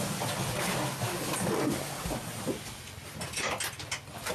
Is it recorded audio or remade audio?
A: recorded